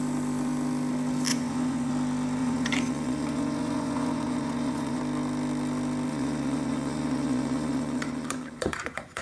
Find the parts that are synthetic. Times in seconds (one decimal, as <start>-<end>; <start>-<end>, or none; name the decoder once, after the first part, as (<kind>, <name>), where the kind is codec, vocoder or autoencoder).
1.3-1.9 (vocoder, Vocos); 2.4-5.0; 6.1-9.2